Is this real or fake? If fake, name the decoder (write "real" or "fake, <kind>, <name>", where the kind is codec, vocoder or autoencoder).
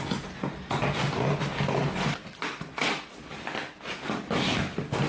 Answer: real